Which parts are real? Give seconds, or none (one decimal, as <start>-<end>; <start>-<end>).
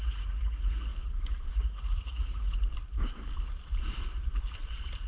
0.9-1.5; 2.7-5.1